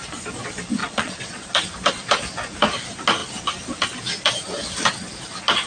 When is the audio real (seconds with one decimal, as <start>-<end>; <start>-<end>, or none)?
0.0-0.8; 1.5-5.7